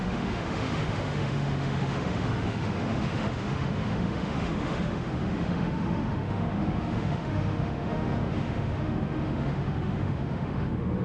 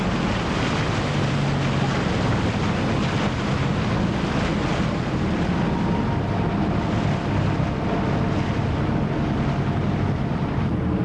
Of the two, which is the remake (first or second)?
first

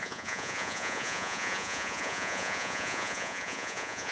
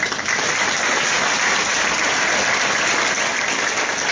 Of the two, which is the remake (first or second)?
first